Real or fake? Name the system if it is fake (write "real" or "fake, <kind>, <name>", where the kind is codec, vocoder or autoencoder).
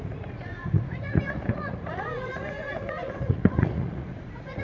fake, vocoder, Vocos